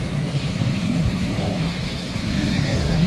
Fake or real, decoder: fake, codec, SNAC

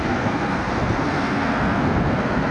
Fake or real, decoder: fake, codec, SNAC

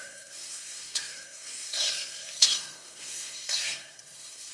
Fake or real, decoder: fake, codec, SNAC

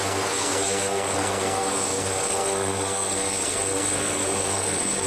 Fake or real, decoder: fake, codec, SNAC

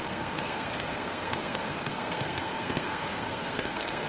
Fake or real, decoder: fake, codec, SNAC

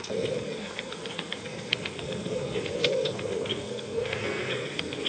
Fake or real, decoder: fake, codec, SNAC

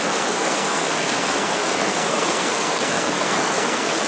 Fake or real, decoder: fake, codec, SNAC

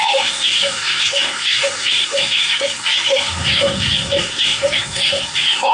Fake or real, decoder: fake, codec, SNAC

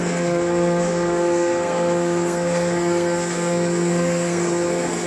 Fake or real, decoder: fake, codec, SNAC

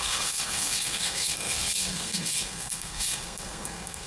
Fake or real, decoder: fake, codec, SNAC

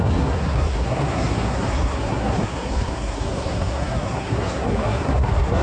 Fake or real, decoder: fake, codec, SNAC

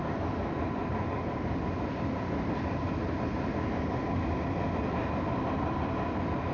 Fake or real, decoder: real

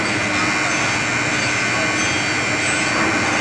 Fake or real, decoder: real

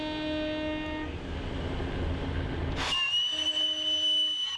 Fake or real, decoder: real